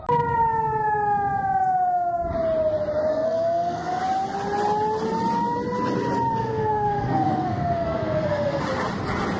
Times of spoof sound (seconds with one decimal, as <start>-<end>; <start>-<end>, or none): 3.1-4.0; 6.4-8.6